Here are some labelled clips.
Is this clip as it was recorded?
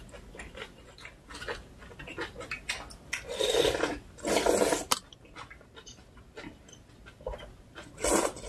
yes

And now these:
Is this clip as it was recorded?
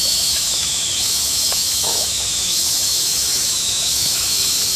no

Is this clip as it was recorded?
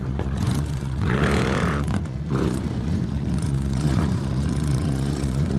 no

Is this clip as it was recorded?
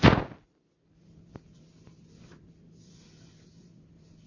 yes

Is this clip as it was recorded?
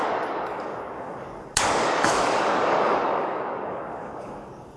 no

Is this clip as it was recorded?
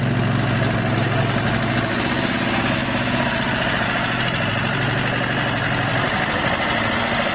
yes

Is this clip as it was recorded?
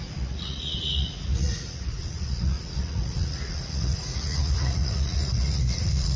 no